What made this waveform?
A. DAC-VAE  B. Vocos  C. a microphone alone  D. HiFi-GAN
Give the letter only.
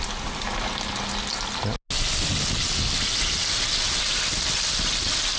C